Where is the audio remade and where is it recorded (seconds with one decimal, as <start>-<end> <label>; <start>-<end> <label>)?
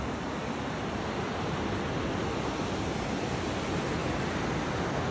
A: 0.0-5.1 recorded